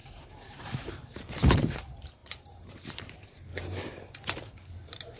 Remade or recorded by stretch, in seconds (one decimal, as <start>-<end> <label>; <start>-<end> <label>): 0.0-5.2 remade